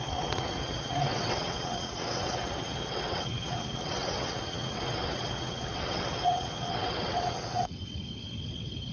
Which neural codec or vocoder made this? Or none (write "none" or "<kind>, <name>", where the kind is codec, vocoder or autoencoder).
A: vocoder, WaveNeXt